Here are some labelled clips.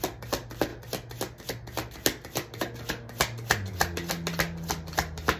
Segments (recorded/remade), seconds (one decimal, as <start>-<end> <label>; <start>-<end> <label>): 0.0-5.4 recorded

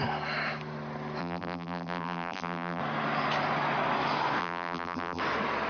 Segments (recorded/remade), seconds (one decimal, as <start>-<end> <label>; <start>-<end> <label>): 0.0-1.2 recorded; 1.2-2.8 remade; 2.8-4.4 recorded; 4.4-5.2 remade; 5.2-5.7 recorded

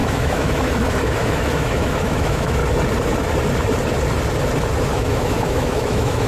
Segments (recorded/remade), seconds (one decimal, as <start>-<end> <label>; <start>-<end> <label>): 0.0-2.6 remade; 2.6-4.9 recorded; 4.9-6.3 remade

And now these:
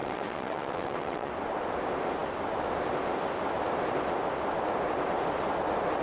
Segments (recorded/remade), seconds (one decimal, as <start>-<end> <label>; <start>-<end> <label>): 0.0-1.3 remade; 1.3-6.0 recorded

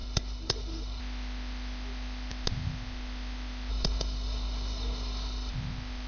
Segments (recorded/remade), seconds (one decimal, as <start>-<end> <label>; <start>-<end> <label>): 0.0-1.0 remade; 1.0-3.7 recorded; 3.7-5.5 remade; 5.5-6.1 recorded

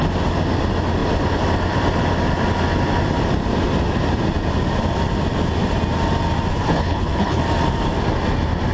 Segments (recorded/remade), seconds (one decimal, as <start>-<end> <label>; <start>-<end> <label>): 0.0-6.5 recorded; 6.5-7.4 remade; 7.4-8.7 recorded